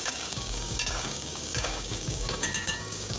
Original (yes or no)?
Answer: no